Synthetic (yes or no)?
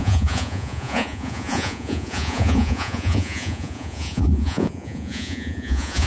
yes